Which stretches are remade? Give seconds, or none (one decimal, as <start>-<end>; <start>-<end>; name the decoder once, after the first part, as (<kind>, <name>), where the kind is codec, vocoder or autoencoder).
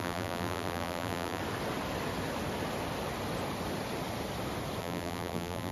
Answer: 0.0-1.4 (vocoder, BigVGAN v2); 4.8-5.7